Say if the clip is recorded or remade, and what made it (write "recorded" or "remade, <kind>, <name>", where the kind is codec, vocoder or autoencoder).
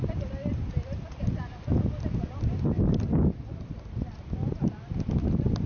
recorded